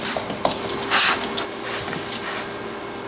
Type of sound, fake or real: real